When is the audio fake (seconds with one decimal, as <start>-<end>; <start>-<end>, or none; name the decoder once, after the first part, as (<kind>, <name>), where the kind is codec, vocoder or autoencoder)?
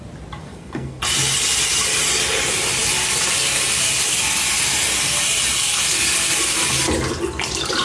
0.4-1.0 (codec, SNAC)